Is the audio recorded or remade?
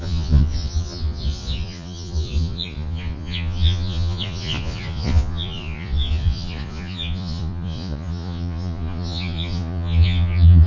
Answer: remade